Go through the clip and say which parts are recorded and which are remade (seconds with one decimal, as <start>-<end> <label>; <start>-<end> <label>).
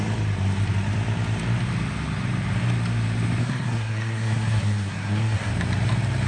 0.0-3.4 recorded; 3.4-5.5 remade; 5.5-6.3 recorded